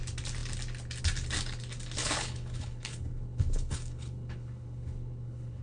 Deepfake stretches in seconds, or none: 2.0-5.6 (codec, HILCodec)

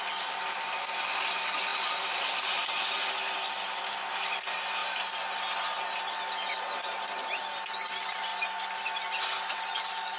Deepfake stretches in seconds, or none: none

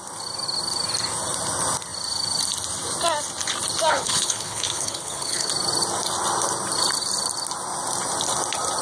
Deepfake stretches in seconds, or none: 3.9-5.5 (codec, HILCodec)

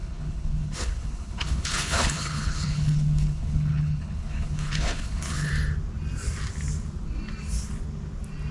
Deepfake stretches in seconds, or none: 0.0-5.5 (codec, HILCodec)